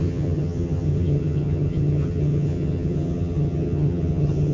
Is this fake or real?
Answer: fake